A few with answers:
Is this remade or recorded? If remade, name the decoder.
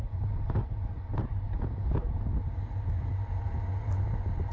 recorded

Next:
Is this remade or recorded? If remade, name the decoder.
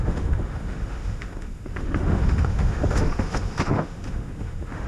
remade, autoencoder, DAC-VAE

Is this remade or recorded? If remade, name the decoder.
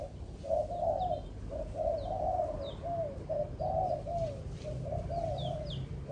recorded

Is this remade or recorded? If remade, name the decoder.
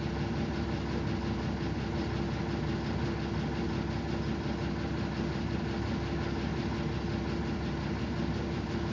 recorded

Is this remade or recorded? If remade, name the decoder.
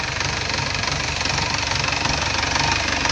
recorded